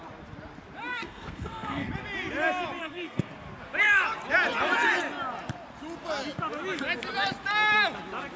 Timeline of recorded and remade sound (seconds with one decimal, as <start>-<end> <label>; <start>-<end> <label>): 0.0-0.9 recorded; 0.9-1.9 remade; 1.9-2.8 recorded; 2.8-3.3 remade; 3.3-8.4 recorded